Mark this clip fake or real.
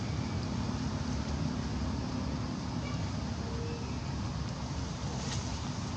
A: real